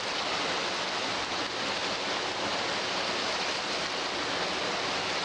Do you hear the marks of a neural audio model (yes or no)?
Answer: no